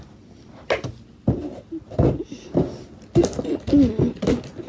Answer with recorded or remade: recorded